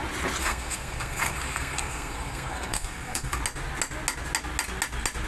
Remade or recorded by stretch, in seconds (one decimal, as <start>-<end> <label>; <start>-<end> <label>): 0.0-0.4 recorded; 0.4-3.4 remade; 3.4-5.3 recorded